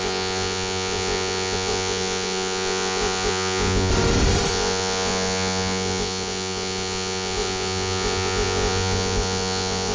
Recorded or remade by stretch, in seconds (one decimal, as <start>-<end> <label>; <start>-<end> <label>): 0.0-3.9 remade; 3.9-4.5 recorded; 4.5-9.9 remade